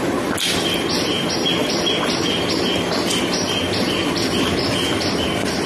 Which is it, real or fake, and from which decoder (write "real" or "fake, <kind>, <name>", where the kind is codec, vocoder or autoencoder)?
real